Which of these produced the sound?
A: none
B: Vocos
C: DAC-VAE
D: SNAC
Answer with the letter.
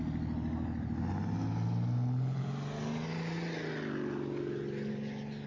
A